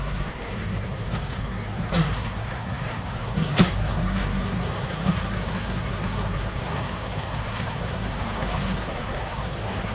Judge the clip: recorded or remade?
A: remade